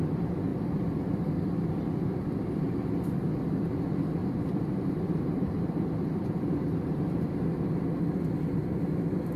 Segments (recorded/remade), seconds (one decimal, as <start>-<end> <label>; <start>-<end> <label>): 0.0-4.2 recorded; 4.2-7.3 remade; 7.3-9.4 recorded